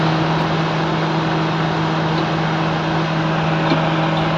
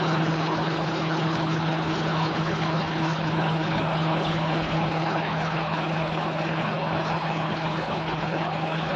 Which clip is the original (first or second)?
first